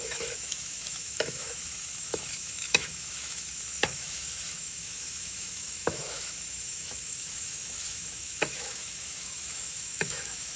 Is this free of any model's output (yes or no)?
no